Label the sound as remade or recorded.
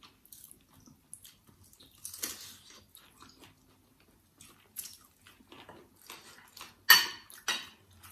recorded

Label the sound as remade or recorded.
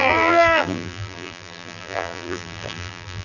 remade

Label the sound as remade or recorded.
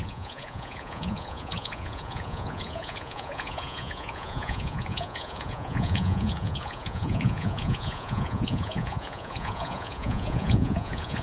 remade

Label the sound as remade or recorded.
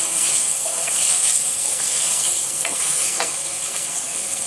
remade